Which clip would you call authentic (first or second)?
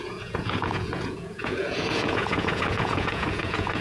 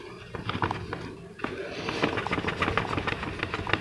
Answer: second